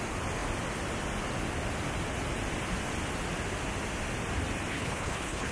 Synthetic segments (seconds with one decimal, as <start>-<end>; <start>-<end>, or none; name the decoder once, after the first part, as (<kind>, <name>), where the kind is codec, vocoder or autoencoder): 4.7-5.5 (codec, HILCodec)